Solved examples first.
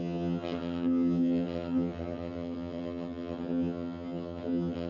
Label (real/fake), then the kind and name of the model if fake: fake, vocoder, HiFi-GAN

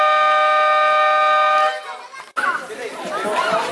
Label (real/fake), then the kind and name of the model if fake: real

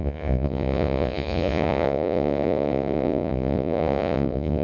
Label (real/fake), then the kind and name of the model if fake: fake, vocoder, Vocos